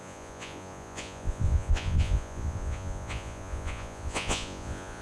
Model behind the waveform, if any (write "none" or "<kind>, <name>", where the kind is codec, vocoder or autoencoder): vocoder, Vocos